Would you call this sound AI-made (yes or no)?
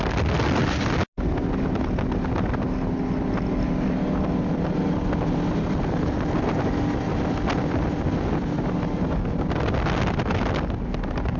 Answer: no